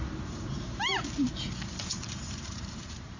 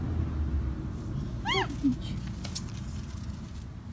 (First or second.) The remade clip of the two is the first